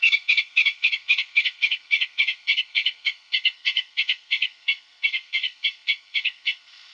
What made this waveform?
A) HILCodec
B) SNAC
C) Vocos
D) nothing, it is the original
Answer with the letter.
B